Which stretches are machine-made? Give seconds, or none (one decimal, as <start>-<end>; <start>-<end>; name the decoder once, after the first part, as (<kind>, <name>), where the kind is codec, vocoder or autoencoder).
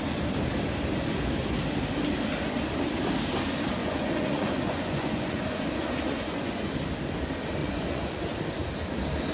3.8-6.6 (vocoder, Vocos); 7.6-8.2